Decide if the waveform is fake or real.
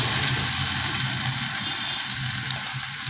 real